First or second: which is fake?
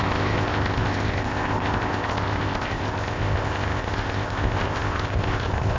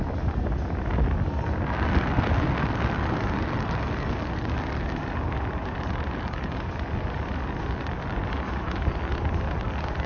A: first